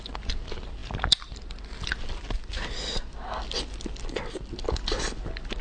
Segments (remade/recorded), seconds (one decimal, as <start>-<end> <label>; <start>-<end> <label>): 0.0-5.6 recorded